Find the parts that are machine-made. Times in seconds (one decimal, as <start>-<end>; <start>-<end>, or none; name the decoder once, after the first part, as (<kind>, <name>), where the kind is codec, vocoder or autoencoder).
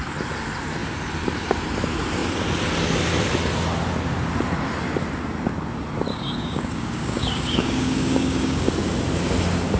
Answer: 6.1-8.7 (codec, DAC)